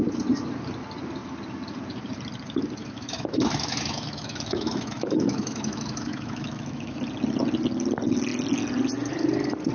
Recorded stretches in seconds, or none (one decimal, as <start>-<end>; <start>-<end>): 0.0-2.8; 7.0-9.7